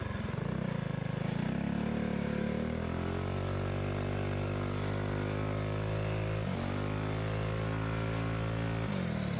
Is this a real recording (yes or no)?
yes